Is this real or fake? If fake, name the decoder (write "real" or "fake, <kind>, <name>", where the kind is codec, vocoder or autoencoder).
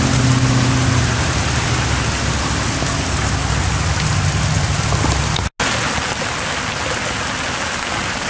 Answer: real